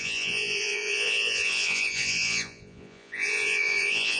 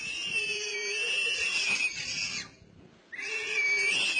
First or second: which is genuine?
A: second